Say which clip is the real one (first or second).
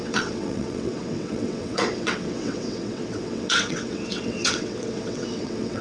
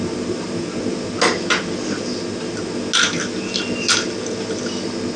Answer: second